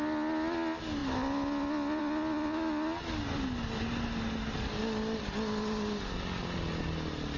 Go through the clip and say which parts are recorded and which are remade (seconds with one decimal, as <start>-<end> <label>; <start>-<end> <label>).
0.0-7.4 recorded